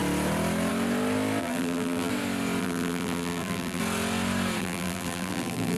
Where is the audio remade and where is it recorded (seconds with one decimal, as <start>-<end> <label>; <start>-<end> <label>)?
0.0-1.4 recorded; 1.4-2.1 remade; 2.1-2.6 recorded; 2.6-3.8 remade; 3.8-4.6 recorded; 4.6-5.8 remade